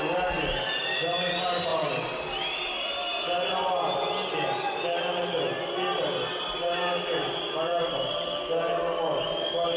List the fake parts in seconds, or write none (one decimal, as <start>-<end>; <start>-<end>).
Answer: none